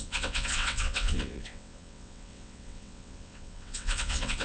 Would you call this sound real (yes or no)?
no